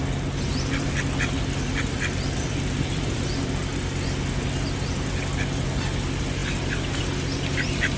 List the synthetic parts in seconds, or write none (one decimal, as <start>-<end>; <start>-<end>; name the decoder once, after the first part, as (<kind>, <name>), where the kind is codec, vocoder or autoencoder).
0.5-3.3 (vocoder, BigVGAN v2)